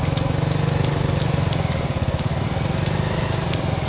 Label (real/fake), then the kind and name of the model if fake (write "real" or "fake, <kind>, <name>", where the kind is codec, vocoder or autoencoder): real